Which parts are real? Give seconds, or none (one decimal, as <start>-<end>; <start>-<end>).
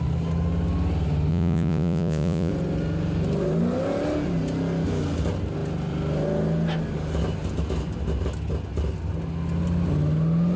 0.0-1.3; 2.5-10.6